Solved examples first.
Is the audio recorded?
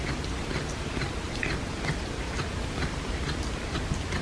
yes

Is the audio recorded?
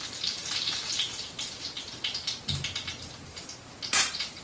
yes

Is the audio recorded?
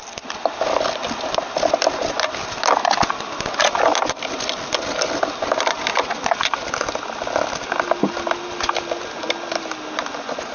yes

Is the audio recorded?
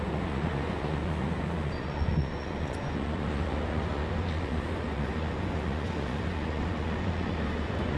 no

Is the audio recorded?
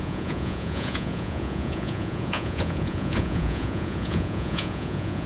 no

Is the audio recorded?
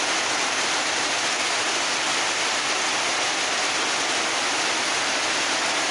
yes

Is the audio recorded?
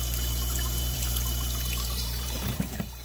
no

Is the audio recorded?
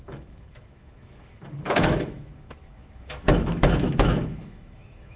no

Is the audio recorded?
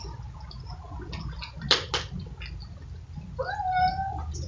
yes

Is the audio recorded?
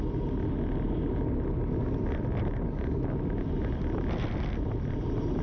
yes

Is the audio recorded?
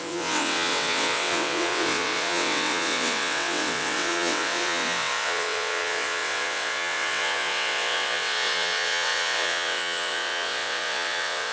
no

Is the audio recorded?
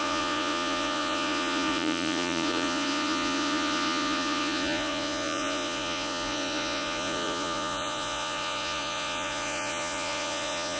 no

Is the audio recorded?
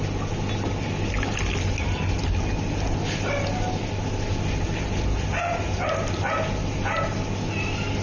yes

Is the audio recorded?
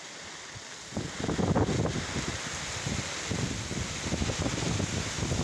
yes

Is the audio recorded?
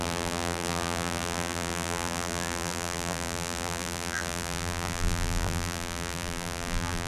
no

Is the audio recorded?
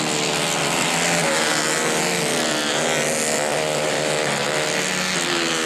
yes